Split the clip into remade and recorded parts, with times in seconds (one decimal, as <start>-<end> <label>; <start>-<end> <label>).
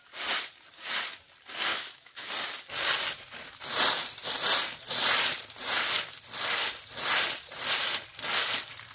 0.0-1.7 recorded; 1.7-2.3 remade; 2.3-8.9 recorded